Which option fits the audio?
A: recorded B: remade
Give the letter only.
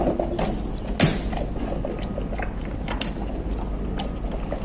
A